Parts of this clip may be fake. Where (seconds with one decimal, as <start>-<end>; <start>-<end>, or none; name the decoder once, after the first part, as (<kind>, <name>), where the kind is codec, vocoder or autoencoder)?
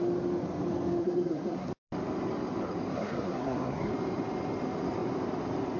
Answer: 1.0-1.7 (codec, SNAC); 2.9-3.9